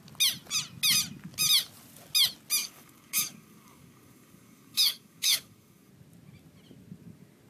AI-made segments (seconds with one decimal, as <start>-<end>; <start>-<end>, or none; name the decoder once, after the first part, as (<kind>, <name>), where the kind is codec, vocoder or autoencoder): 2.6-5.9 (codec, DAC)